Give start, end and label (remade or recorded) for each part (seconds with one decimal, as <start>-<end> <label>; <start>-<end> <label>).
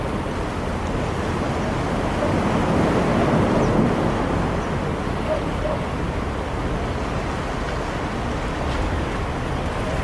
0.0-10.0 recorded